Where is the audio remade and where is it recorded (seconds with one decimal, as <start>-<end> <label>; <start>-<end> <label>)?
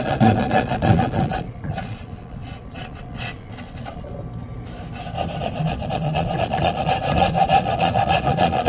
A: 0.0-4.1 remade; 4.1-5.4 recorded; 5.4-8.7 remade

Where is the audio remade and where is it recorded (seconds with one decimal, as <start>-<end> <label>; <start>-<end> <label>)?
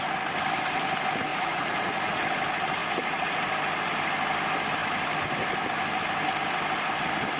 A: 0.0-1.3 recorded; 1.3-2.2 remade; 2.2-2.8 recorded; 2.8-3.5 remade; 3.5-7.4 recorded